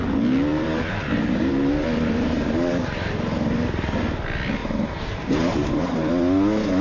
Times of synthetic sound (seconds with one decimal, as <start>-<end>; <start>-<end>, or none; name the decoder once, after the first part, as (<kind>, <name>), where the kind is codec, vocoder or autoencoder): 0.5-4.0 (vocoder, BigVGAN v2); 4.6-6.1